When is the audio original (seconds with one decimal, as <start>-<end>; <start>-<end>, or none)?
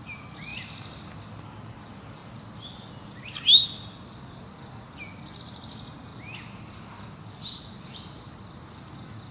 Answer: 0.0-9.3